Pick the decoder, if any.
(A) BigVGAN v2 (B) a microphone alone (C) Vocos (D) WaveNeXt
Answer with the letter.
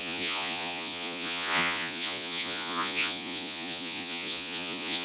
C